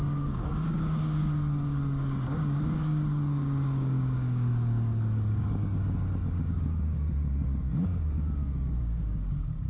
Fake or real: fake